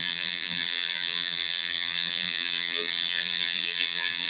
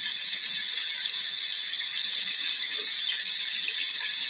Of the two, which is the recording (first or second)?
second